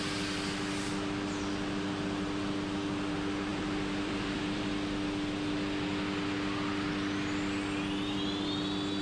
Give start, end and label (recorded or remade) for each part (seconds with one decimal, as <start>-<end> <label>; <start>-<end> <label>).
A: 0.0-3.5 recorded; 3.5-4.7 remade; 4.7-9.0 recorded